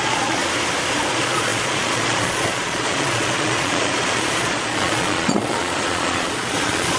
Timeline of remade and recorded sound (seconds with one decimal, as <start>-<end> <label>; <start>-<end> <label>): 0.0-0.4 remade; 0.4-1.1 recorded; 1.1-7.0 remade